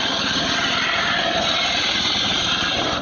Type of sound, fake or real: real